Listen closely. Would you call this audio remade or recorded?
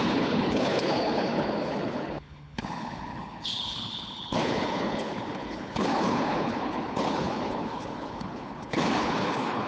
remade